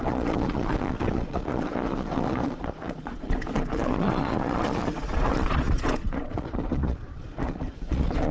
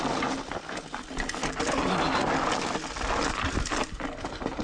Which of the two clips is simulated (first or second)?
first